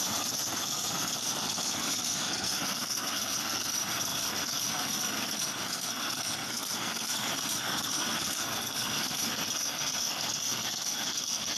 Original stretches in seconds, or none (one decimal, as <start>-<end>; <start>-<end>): none